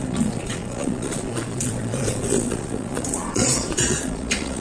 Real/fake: fake